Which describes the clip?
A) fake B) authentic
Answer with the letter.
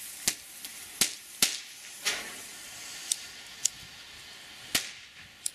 B